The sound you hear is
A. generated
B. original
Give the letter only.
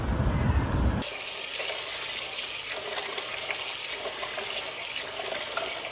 B